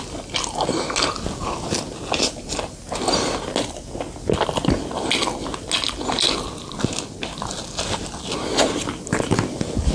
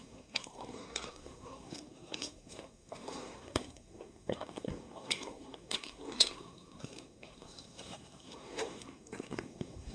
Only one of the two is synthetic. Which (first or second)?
second